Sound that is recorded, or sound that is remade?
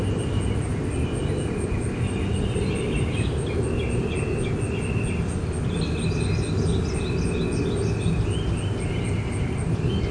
recorded